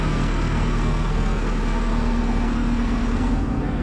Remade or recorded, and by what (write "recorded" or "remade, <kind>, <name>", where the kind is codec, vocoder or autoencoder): remade, codec, SNAC